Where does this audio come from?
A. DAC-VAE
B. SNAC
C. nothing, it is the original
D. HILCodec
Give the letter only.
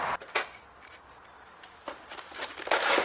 C